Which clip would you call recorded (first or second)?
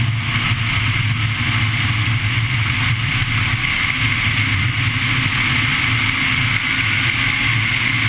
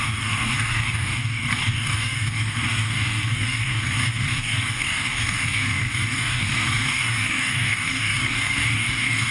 first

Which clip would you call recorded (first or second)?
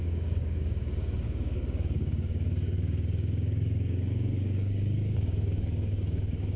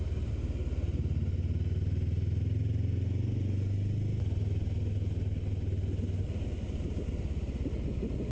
second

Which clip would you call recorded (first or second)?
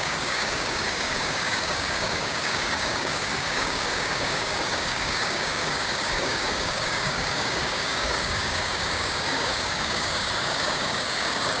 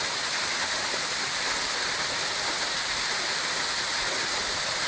second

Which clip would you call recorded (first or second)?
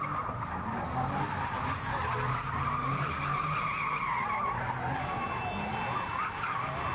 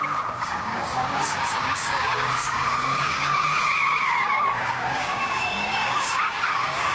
first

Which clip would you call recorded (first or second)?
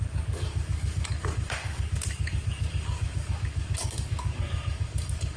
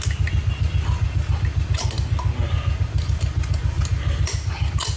second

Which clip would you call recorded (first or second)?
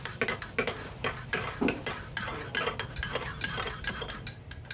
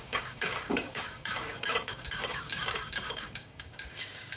first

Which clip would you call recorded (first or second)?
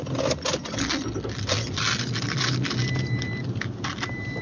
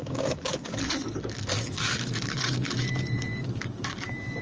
first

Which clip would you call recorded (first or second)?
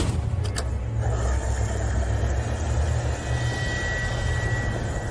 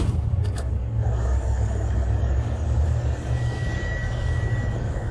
first